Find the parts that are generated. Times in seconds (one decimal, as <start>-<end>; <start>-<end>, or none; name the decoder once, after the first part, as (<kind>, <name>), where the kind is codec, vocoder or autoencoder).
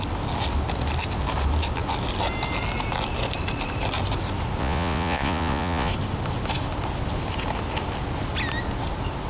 4.6-5.9 (vocoder, Vocos)